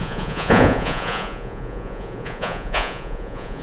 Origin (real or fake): fake